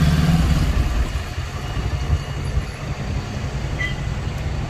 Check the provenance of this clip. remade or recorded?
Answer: recorded